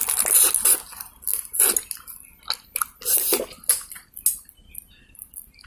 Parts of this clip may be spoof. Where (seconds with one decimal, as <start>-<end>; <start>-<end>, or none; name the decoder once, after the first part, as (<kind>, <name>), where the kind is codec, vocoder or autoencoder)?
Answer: none

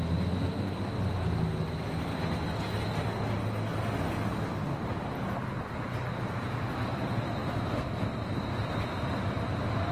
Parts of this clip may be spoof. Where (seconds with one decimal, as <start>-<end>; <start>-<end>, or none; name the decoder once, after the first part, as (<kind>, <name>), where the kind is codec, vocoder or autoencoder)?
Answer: none